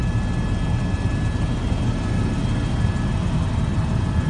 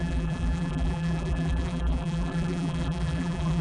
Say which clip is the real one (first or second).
first